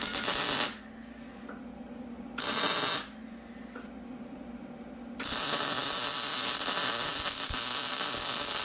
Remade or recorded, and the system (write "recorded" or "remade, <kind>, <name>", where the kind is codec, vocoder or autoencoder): recorded